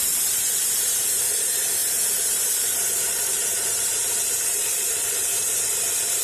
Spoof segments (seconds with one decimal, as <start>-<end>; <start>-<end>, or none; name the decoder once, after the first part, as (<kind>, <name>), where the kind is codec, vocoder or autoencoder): 0.0-6.2 (vocoder, BigVGAN v2)